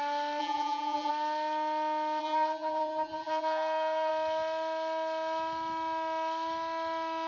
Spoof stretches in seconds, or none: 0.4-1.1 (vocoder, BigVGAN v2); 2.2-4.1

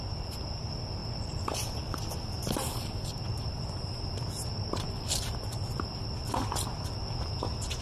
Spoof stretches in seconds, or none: 1.0-1.8 (vocoder, BigVGAN v2)

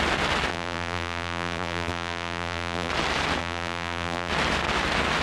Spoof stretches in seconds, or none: 0.5-2.9 (vocoder, BigVGAN v2); 3.4-4.3

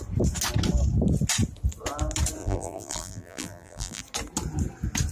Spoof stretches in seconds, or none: 2.4-4.0 (vocoder, BigVGAN v2)

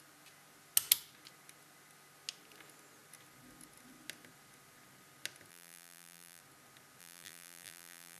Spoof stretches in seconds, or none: 5.5-6.4 (vocoder, BigVGAN v2); 7.0-8.2

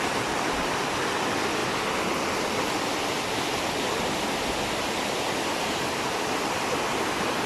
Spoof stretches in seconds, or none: none

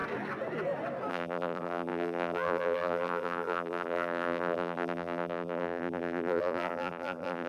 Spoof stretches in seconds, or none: 1.1-7.5 (vocoder, BigVGAN v2)

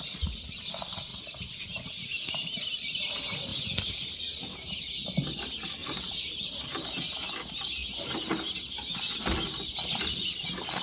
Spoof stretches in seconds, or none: 1.1-3.1 (vocoder, BigVGAN v2); 3.5-4.9; 5.8-7.1